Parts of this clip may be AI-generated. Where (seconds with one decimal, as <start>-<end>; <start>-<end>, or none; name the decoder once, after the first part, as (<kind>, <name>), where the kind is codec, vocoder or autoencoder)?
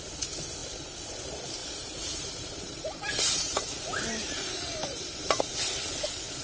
1.6-5.4 (vocoder, BigVGAN v2)